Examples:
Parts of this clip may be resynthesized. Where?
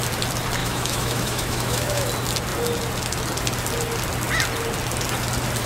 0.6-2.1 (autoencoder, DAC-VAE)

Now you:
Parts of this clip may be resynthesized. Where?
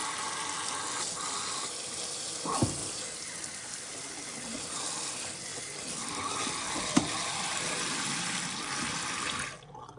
2.8-4.8 (vocoder, BigVGAN v2)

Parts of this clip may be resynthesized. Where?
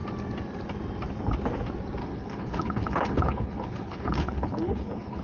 2.0-5.2 (codec, HILCodec)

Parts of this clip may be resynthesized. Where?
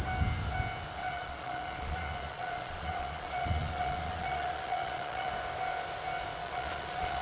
1.0-5.3 (vocoder, Vocos); 6.4-7.2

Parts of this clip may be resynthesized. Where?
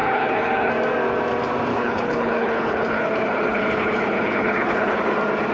0.0-0.7 (codec, HILCodec); 1.7-5.0